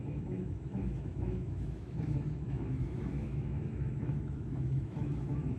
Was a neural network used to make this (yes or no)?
yes